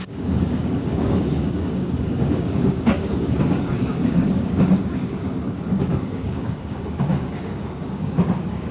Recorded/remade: remade